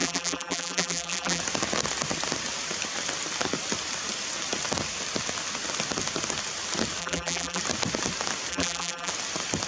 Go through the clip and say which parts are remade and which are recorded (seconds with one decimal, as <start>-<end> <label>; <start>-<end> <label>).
0.0-1.4 remade; 1.4-7.0 recorded; 7.0-7.6 remade; 7.6-8.5 recorded; 8.5-9.1 remade; 9.1-9.7 recorded